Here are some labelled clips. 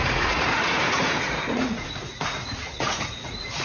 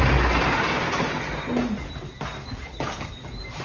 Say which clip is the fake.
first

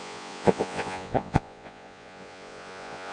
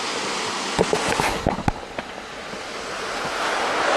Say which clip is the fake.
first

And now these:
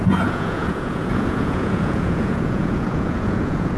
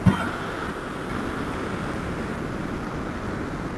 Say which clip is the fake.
first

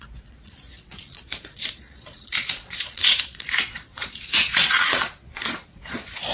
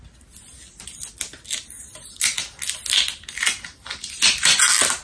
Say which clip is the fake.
first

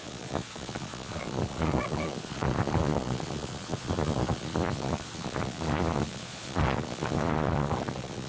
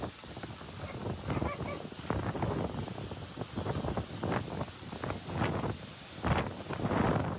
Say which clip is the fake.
first